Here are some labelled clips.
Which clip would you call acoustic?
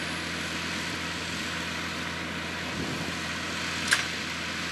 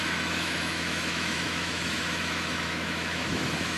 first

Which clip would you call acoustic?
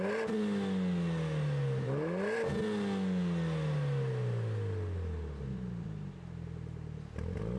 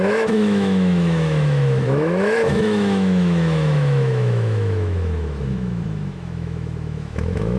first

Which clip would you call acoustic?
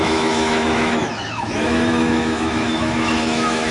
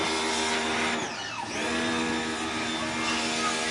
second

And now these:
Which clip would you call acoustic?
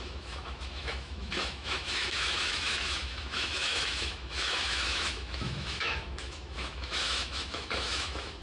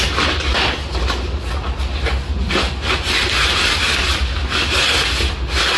second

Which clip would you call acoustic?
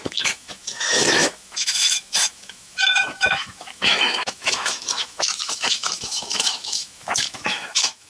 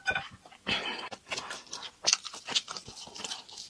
second